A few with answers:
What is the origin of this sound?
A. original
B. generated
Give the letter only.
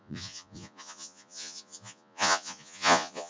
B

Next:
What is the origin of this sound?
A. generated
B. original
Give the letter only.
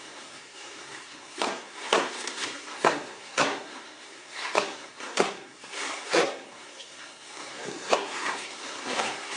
A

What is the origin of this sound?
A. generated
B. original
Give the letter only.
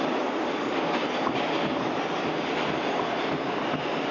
B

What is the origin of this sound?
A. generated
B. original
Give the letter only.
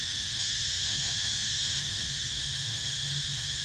A